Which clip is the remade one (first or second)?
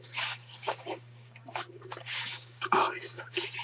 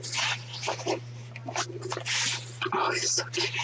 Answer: first